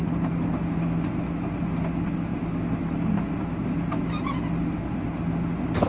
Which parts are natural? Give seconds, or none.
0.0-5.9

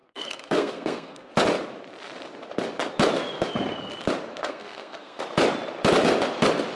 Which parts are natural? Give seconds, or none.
1.3-4.4; 5.2-6.8

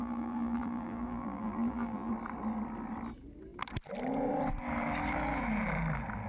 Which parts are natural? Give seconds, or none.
2.1-6.3

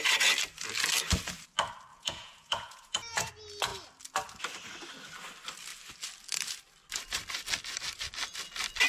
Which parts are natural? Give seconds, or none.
0.0-1.9; 3.3-8.9

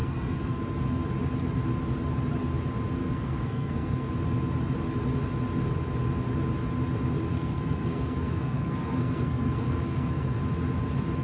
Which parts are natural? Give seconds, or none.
0.6-3.0; 4.1-7.3; 10.4-11.2

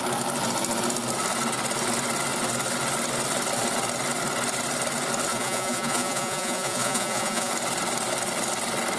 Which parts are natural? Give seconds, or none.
0.0-5.3; 7.5-9.0

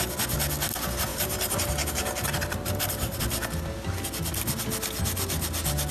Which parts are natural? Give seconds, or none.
0.0-1.1; 3.2-5.9

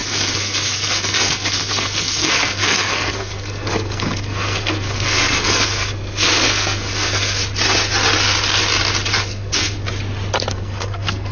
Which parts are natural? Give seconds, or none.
7.4-9.2; 9.8-10.5